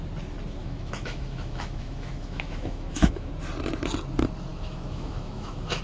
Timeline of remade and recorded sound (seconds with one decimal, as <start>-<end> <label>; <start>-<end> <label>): 0.0-0.6 recorded; 0.6-3.3 remade; 3.3-4.5 recorded; 4.5-5.8 remade